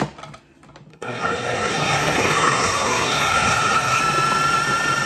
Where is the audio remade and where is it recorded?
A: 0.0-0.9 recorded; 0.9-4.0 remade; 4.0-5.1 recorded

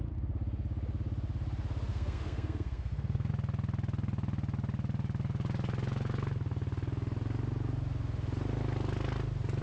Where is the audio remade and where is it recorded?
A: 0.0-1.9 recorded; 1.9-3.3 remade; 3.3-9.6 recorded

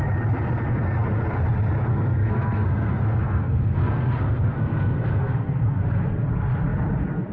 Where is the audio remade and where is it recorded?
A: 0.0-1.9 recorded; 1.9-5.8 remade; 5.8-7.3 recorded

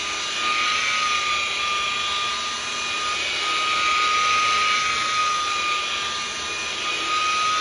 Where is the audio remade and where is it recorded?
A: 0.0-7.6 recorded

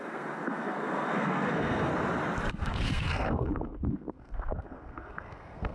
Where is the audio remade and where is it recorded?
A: 0.0-1.9 remade; 1.9-2.5 recorded; 2.5-5.7 remade